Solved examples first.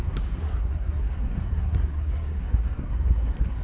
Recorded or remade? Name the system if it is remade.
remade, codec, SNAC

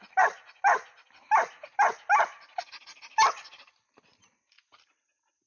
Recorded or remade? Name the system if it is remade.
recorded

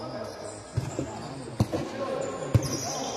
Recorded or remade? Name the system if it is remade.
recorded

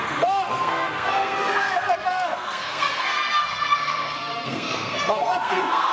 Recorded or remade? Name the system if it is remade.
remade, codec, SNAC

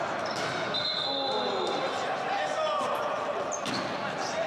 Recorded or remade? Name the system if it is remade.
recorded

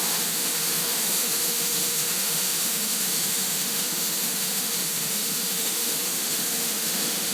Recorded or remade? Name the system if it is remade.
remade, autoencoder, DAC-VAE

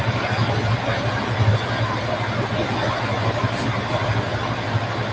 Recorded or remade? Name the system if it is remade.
recorded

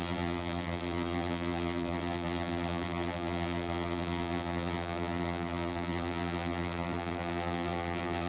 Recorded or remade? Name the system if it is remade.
remade, vocoder, BigVGAN v2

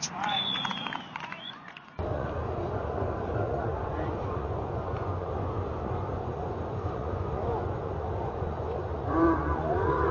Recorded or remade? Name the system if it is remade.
remade, vocoder, Vocos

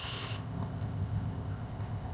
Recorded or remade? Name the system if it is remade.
remade, codec, ZipCodec